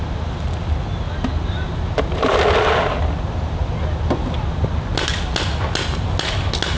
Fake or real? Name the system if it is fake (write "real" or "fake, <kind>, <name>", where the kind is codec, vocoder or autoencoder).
real